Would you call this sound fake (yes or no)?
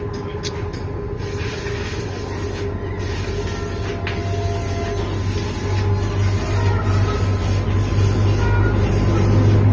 no